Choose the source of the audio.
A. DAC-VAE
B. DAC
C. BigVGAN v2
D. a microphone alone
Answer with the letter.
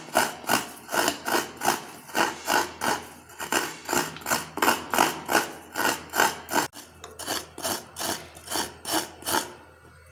D